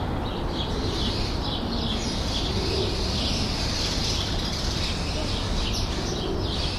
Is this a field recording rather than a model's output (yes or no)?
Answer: yes